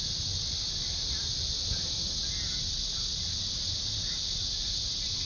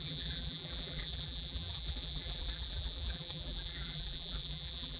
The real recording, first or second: first